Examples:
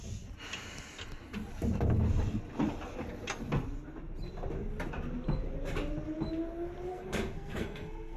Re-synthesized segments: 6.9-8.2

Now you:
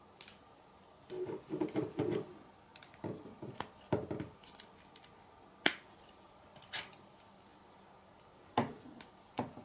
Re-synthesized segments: none